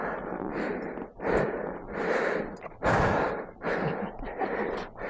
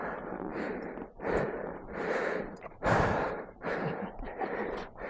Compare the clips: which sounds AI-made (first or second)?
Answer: second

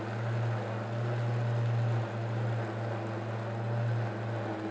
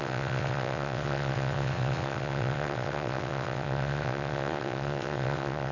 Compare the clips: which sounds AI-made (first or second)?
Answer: second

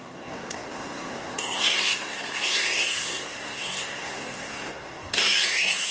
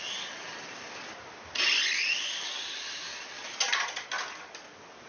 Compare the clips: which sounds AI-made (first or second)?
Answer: first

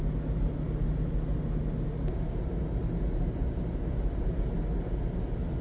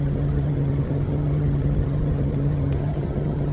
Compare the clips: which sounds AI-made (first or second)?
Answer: second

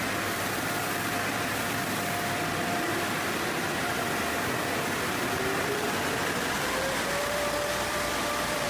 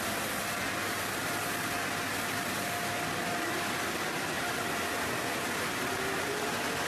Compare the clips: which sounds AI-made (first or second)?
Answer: first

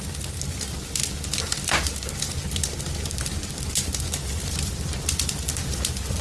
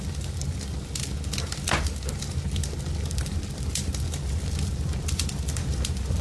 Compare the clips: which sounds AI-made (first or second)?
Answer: second